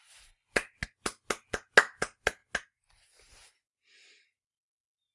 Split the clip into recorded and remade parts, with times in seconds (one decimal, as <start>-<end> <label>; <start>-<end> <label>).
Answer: 0.0-0.8 remade; 0.8-1.8 recorded; 1.8-2.4 remade; 2.4-2.9 recorded; 2.9-5.1 remade